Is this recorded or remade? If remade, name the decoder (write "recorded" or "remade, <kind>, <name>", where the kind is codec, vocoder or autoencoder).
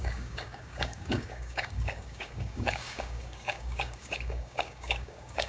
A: remade, codec, DAC